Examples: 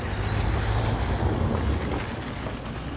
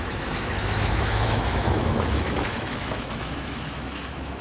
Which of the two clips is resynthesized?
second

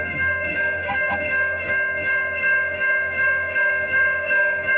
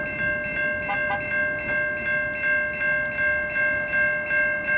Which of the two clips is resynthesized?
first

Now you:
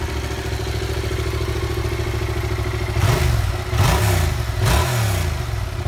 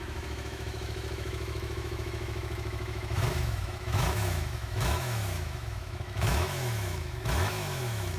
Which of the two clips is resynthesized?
second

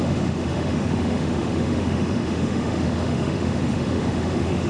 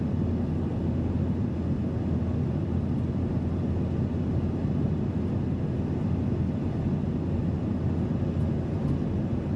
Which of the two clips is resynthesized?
first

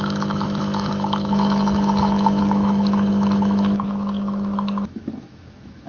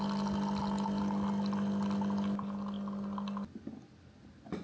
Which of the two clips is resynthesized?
first